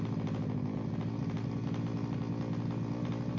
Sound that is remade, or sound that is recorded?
recorded